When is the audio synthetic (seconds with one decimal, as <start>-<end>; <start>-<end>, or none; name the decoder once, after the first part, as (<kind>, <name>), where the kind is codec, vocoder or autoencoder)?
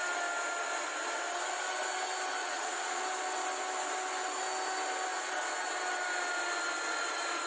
2.4-3.0 (vocoder, Vocos)